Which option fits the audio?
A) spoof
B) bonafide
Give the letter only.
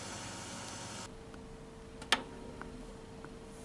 B